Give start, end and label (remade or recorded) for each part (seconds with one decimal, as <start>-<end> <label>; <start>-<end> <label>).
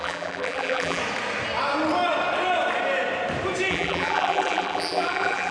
0.0-1.0 remade; 1.0-3.7 recorded; 3.7-5.5 remade